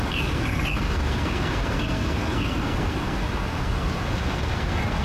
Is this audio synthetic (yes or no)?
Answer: yes